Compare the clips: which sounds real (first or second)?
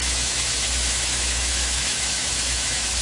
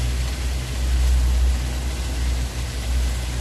second